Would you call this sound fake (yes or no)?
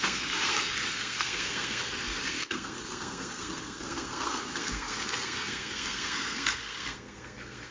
yes